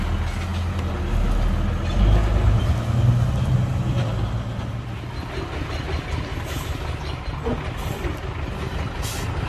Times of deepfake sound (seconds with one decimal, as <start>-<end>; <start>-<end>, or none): none